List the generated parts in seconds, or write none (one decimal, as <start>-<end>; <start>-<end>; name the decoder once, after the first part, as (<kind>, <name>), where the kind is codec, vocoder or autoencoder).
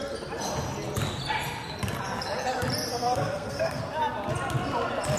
2.9-3.8 (codec, SNAC)